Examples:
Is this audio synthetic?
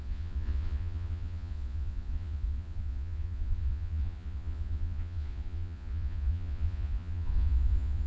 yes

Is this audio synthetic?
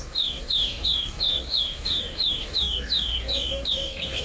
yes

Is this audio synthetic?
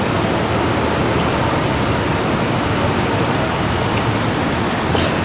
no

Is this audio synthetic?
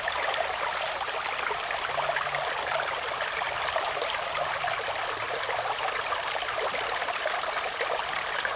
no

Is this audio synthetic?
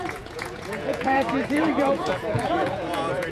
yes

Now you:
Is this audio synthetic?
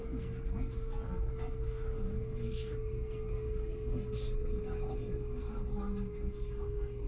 yes